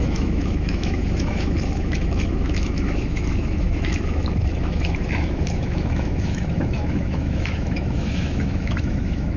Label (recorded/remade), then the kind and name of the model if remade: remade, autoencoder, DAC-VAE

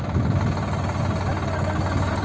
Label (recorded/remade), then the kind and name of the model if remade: recorded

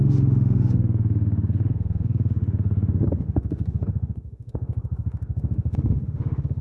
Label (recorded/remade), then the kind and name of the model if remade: remade, autoencoder, DAC-VAE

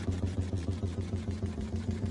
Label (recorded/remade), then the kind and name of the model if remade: remade, vocoder, Vocos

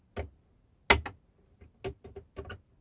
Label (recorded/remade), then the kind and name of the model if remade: recorded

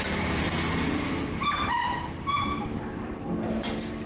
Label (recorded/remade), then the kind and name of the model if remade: remade, vocoder, BigVGAN v2